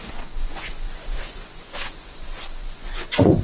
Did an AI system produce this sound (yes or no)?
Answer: yes